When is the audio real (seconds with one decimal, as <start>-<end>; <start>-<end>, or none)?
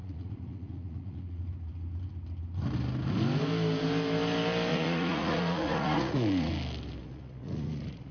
1.4-4.7; 6.5-7.0